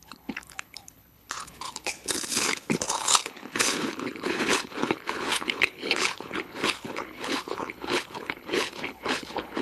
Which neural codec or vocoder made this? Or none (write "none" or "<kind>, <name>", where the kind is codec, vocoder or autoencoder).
codec, HILCodec